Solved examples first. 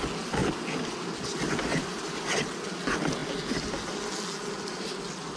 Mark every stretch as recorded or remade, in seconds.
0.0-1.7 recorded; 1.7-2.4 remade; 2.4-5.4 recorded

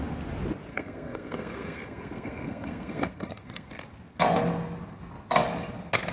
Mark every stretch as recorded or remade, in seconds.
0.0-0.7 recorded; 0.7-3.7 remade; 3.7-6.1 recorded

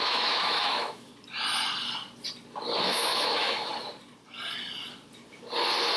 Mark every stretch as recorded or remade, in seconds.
0.0-1.1 remade; 1.1-2.8 recorded; 2.8-3.7 remade; 3.7-6.0 recorded